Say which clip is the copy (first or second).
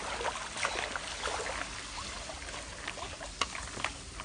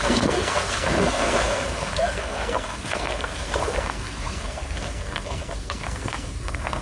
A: second